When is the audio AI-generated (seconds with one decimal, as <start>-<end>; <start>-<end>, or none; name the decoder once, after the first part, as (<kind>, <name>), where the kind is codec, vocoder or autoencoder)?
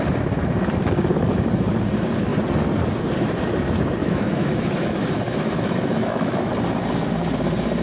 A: 4.0-6.5 (autoencoder, DAC-VAE)